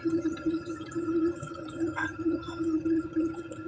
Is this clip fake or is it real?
fake